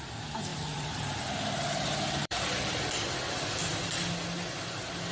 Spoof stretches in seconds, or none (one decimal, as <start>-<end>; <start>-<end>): 0.5-2.8